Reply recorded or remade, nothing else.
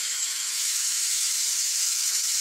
remade